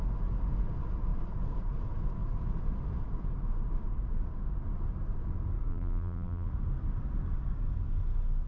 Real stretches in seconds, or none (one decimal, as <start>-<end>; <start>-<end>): 0.0-5.7; 6.5-8.5